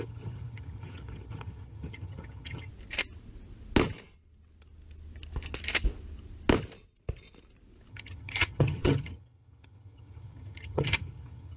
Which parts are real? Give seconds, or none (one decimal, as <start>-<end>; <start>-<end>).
2.7-7.9